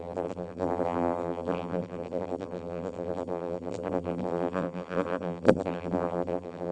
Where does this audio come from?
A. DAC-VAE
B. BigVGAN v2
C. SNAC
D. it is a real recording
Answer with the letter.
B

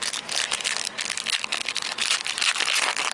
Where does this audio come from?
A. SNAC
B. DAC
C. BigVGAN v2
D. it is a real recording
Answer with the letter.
D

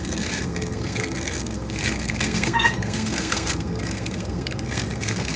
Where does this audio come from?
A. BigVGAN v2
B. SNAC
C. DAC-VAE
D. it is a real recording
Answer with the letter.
B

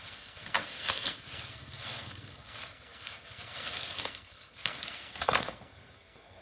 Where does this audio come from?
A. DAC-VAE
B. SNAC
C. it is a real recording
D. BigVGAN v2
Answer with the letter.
B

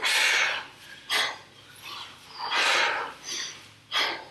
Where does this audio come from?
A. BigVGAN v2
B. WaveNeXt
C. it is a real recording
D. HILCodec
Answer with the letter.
C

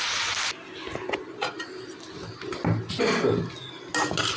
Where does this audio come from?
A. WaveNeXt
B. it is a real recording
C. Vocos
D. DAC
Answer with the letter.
B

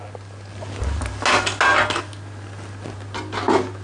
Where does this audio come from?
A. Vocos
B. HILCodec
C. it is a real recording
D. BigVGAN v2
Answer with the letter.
C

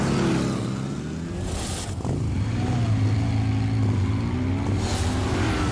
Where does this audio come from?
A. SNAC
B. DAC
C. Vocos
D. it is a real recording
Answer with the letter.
D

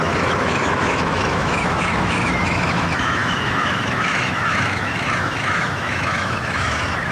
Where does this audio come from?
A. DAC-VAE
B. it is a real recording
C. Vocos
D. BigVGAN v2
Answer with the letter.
A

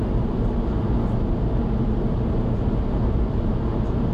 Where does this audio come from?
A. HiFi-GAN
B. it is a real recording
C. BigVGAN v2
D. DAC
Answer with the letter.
B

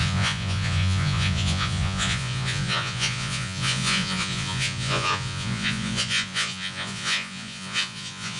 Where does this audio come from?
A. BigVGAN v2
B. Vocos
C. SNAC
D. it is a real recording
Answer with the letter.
B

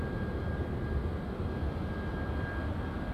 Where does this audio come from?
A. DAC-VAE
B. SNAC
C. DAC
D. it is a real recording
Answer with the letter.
D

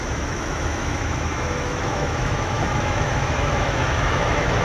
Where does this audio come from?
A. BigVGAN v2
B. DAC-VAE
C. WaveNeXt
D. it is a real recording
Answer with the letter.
B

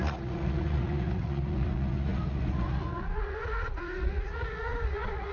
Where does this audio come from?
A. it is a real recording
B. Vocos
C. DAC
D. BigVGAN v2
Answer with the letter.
B